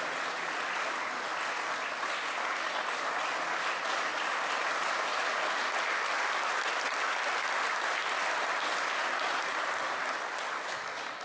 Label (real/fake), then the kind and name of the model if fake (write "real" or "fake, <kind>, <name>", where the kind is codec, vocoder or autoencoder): real